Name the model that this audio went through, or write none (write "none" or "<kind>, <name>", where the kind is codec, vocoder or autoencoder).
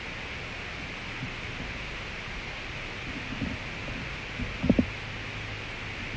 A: none